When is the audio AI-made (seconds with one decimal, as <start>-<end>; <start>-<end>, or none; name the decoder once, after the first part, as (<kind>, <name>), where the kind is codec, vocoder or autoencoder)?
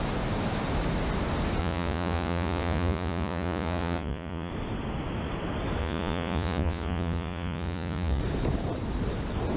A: 1.6-4.5 (vocoder, Vocos); 5.8-8.2